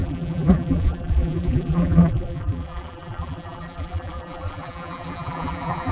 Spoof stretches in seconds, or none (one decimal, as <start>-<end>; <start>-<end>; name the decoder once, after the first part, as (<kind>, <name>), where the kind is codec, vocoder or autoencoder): 0.0-5.9 (vocoder, BigVGAN v2)